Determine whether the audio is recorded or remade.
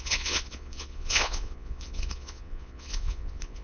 remade